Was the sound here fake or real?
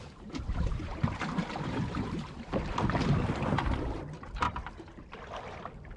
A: fake